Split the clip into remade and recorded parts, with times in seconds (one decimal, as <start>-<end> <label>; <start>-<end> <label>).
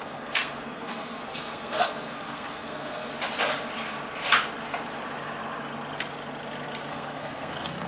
0.0-3.1 remade; 3.1-6.9 recorded; 6.9-7.9 remade